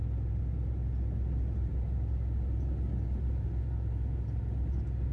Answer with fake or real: real